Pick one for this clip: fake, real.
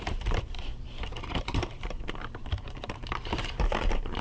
fake